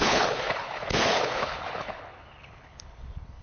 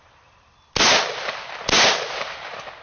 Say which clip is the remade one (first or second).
first